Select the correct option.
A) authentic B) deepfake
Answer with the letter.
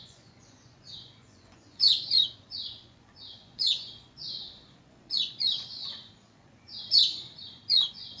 B